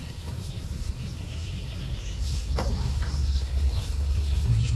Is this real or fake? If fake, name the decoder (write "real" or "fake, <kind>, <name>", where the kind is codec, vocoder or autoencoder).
fake, codec, SNAC